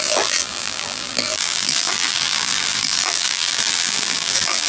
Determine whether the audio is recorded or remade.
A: remade